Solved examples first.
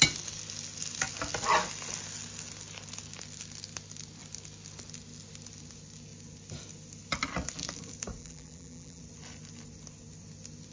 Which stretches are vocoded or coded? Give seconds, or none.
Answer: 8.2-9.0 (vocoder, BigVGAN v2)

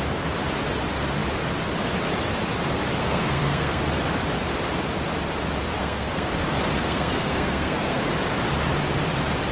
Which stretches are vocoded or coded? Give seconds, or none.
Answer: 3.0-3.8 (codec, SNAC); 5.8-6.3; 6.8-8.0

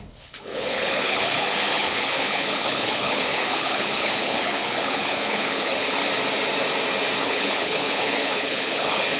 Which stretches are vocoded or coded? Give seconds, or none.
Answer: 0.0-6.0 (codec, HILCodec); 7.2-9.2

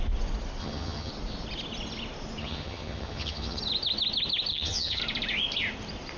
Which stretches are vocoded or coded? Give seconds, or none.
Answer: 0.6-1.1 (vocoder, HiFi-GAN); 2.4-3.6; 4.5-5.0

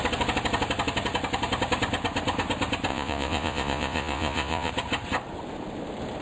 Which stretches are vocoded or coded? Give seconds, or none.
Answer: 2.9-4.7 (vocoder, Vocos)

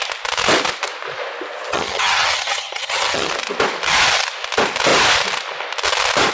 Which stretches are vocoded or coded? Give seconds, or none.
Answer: 1.7-3.3 (vocoder, HiFi-GAN)